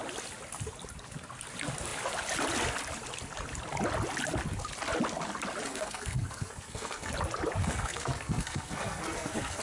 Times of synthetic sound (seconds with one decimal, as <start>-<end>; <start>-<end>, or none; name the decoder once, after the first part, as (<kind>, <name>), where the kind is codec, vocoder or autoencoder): 5.7-7.1 (codec, SNAC); 7.6-9.6